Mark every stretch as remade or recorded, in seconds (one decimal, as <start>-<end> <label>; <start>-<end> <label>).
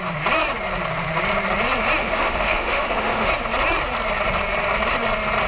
0.0-2.0 recorded; 2.0-3.3 remade; 3.3-5.5 recorded